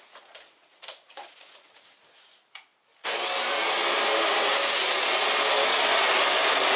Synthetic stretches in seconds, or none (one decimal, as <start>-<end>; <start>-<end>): 0.0-2.7